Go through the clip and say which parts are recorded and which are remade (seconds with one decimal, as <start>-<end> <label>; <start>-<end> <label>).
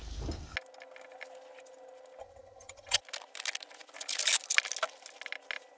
0.0-2.2 recorded; 2.2-3.0 remade; 3.0-5.8 recorded